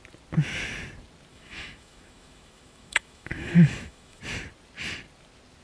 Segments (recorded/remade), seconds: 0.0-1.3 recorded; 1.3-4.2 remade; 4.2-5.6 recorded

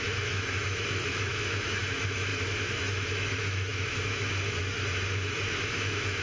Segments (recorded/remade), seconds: 0.0-6.2 remade

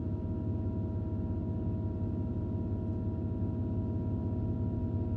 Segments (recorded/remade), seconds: 0.0-5.2 recorded

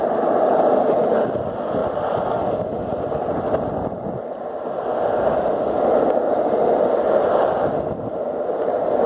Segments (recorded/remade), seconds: 0.0-9.1 recorded

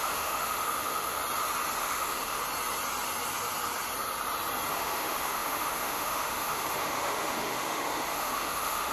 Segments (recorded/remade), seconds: 0.0-1.2 remade; 1.2-1.8 recorded; 1.8-2.4 remade; 2.4-4.7 recorded; 4.7-8.9 remade

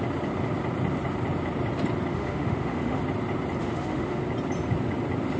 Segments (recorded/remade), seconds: 0.0-2.1 recorded; 2.1-3.0 remade; 3.0-3.6 recorded; 3.6-4.2 remade; 4.2-5.4 recorded

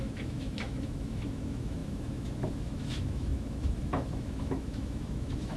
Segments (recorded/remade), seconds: 0.0-5.6 remade

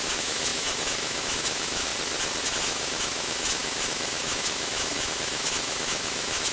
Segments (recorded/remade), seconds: 0.0-1.9 remade; 1.9-2.4 recorded; 2.4-6.5 remade